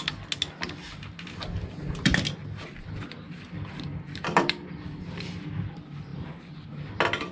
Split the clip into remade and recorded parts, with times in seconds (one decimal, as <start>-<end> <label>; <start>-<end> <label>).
0.0-3.9 recorded; 3.9-5.0 remade; 5.0-6.1 recorded; 6.1-6.7 remade; 6.7-7.3 recorded

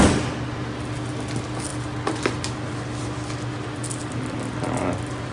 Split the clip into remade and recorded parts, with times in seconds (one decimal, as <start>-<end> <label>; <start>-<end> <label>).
0.0-5.3 recorded